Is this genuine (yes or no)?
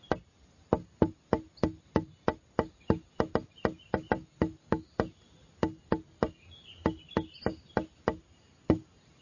yes